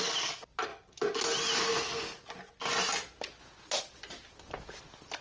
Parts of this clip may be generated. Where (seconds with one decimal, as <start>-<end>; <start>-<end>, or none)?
none